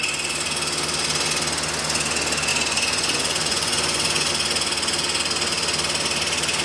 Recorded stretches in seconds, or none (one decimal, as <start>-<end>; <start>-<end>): 0.0-2.5; 4.3-6.6